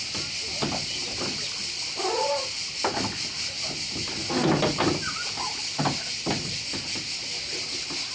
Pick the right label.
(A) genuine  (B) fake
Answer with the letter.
A